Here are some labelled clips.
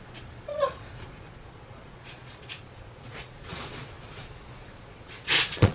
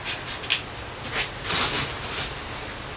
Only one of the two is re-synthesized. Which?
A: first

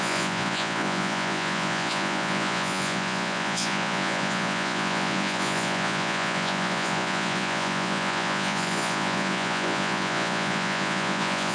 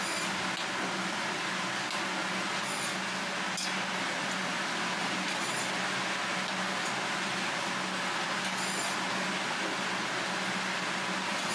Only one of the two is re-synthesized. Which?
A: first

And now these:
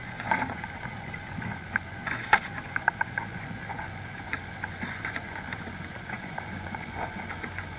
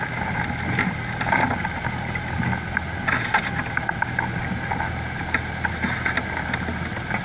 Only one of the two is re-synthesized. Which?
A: first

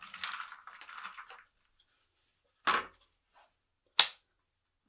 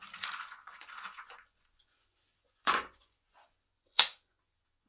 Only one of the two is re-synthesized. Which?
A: second